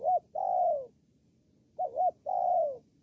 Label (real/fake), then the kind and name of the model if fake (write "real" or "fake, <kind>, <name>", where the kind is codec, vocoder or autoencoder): real